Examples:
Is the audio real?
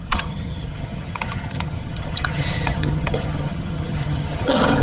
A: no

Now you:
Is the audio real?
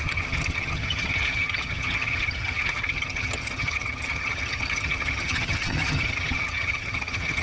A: no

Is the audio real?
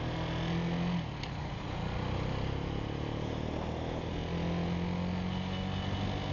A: yes